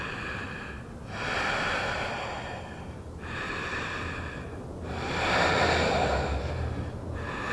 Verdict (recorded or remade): recorded